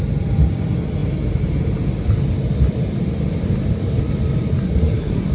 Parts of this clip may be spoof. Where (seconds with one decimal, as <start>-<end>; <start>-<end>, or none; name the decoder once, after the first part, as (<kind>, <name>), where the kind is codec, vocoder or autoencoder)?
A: 4.6-5.3 (codec, SNAC)